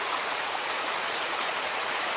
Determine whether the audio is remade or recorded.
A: remade